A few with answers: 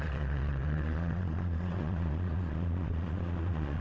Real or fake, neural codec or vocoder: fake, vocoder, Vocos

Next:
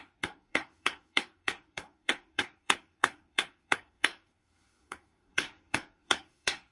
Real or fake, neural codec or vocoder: fake, codec, SNAC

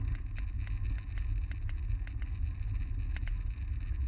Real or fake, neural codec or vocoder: real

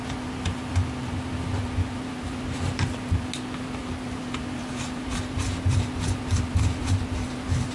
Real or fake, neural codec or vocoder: real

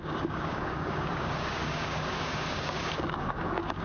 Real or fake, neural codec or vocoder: fake, codec, DAC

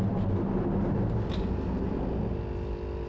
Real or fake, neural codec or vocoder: real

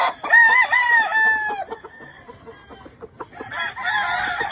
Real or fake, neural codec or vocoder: real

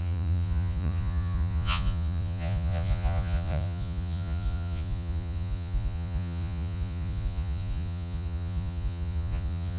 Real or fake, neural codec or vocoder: fake, vocoder, Vocos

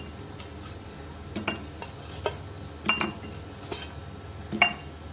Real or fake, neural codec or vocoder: real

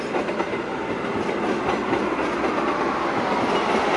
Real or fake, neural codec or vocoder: real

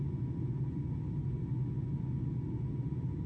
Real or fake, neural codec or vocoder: real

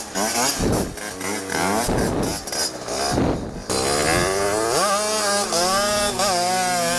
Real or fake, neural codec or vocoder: real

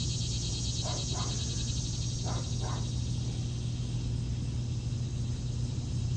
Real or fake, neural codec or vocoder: real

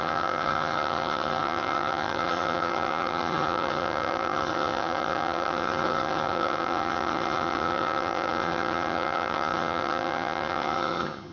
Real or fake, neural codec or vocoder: fake, vocoder, HiFi-GAN